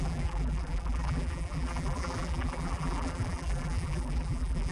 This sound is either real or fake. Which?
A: fake